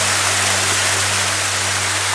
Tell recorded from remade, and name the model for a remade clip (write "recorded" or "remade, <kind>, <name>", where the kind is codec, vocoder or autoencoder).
recorded